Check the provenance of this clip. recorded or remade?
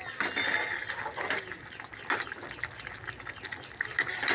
recorded